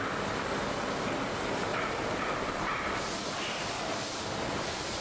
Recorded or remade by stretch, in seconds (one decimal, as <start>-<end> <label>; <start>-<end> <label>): 0.0-1.7 recorded; 1.7-5.0 remade